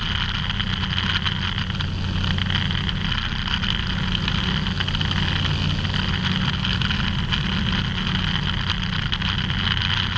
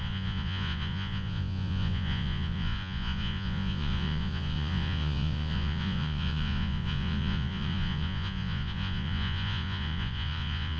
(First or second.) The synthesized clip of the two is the second